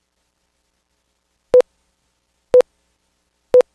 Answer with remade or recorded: recorded